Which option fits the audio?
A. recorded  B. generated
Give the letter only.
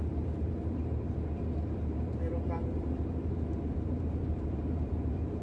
B